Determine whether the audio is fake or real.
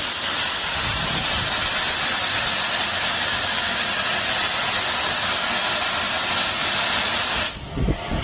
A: real